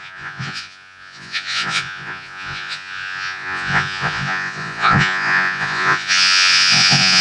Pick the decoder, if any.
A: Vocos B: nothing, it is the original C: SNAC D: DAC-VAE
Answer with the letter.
A